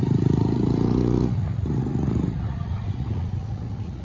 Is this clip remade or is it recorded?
remade